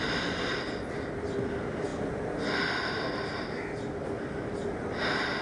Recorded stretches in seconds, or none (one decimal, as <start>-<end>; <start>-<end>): 0.0-5.4